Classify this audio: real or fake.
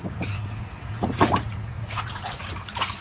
fake